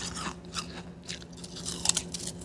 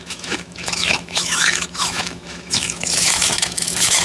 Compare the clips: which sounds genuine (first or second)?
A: first